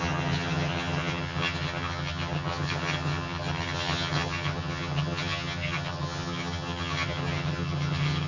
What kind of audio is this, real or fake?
fake